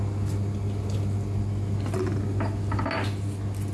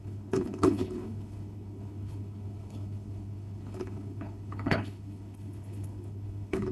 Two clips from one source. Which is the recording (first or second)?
first